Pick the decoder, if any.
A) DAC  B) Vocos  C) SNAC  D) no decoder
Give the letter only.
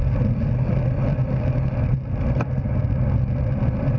D